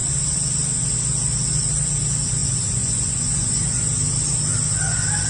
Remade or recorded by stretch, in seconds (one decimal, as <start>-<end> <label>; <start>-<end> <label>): 0.0-2.4 recorded; 2.4-3.8 remade; 3.8-5.3 recorded